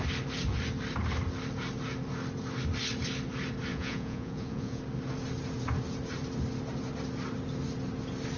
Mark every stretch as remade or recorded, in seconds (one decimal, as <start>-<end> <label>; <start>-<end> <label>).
0.0-3.7 recorded; 3.7-4.8 remade; 4.8-8.4 recorded